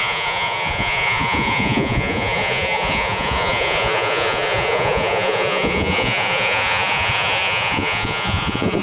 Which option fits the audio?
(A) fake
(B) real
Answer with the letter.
A